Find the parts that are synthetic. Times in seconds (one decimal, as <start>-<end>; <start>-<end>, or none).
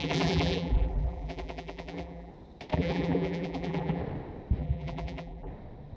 0.0-2.3; 2.7-4.0; 4.6-5.5